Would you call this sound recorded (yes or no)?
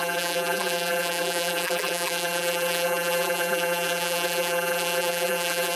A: no